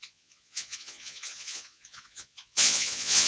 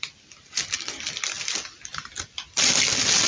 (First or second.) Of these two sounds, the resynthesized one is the first